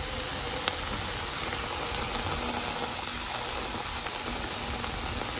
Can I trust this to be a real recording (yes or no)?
yes